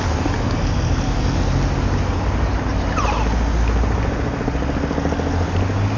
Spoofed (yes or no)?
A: no